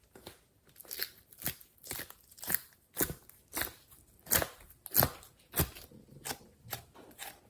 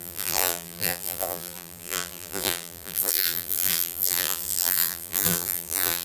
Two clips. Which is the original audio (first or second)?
first